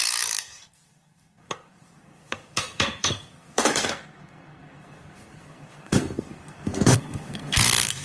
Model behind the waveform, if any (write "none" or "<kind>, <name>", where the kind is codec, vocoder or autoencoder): codec, SNAC